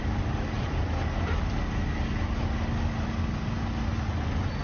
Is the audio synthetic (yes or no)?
no